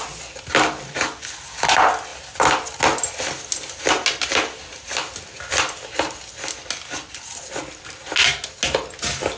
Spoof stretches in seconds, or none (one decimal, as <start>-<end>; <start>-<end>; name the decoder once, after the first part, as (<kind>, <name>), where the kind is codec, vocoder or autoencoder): none